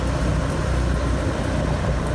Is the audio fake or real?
real